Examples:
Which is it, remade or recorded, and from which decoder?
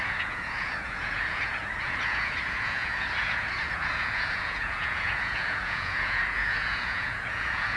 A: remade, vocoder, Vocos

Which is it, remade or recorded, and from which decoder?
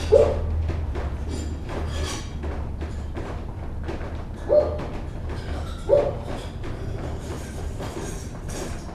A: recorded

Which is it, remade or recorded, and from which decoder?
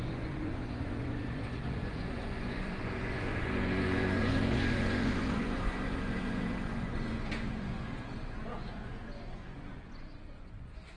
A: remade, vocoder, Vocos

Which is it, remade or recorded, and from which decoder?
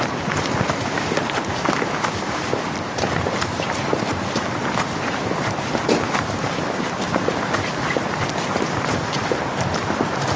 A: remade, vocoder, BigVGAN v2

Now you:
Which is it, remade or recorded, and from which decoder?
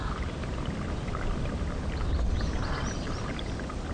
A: recorded